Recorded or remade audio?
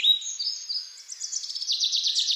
recorded